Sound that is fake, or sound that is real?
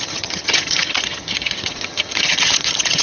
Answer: fake